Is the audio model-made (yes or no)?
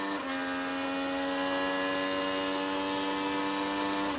no